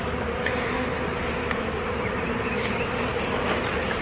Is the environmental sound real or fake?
real